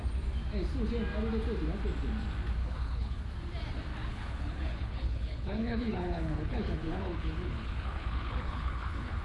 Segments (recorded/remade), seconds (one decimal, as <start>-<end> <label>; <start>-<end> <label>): 0.0-2.6 recorded; 2.6-3.2 remade; 3.2-4.1 recorded; 4.1-9.2 remade